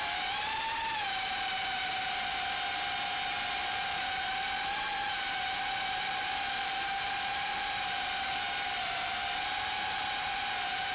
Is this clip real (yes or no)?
no